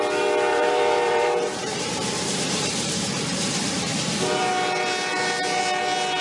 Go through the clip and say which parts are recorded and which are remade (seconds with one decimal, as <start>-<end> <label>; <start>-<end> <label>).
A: 0.0-0.5 recorded; 0.5-3.9 remade; 3.9-6.2 recorded